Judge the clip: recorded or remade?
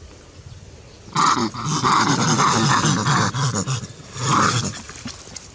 recorded